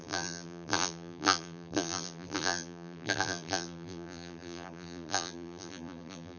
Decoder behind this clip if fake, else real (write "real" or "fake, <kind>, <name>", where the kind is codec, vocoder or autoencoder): fake, vocoder, BigVGAN v2